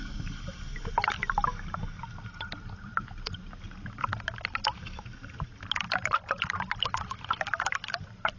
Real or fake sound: real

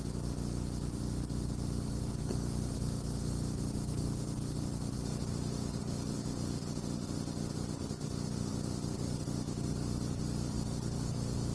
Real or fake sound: real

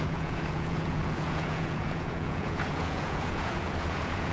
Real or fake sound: fake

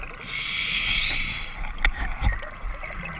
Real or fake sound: real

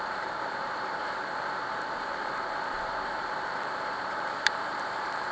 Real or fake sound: fake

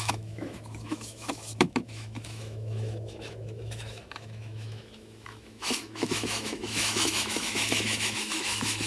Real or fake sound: fake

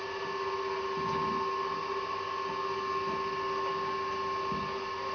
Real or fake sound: real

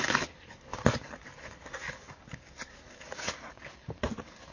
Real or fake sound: fake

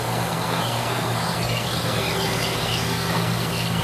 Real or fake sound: fake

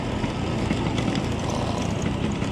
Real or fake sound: real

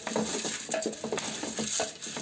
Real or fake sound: real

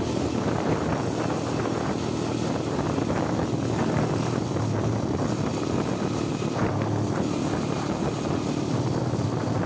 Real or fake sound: real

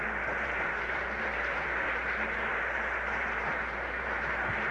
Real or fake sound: fake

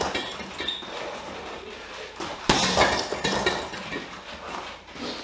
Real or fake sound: real